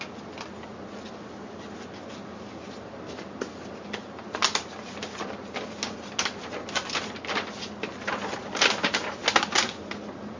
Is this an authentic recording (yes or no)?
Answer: yes